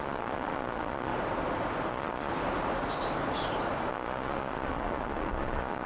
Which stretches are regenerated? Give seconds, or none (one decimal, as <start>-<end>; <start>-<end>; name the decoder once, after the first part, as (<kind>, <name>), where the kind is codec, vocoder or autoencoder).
0.0-1.1 (vocoder, Vocos); 1.9-2.3; 3.9-5.9